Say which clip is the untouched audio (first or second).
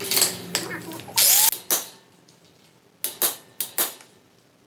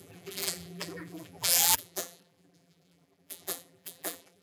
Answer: first